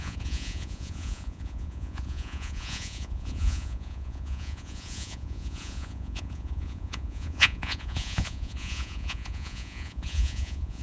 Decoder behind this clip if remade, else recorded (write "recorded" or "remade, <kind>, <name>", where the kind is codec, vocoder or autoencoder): remade, vocoder, Vocos